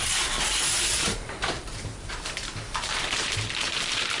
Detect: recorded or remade remade